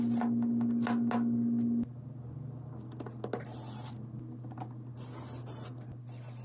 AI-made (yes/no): no